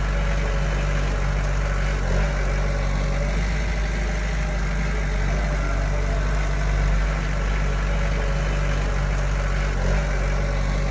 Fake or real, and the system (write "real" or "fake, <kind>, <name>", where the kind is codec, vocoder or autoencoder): real